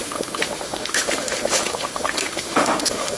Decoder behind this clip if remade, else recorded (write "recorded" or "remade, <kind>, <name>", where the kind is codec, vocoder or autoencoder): remade, autoencoder, DAC-VAE